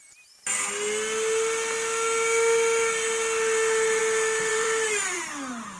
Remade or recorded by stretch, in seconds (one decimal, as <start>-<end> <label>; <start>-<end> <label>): 0.0-4.5 recorded; 4.5-5.3 remade; 5.3-5.8 recorded